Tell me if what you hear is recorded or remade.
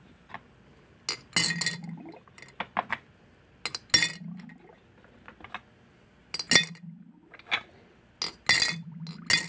recorded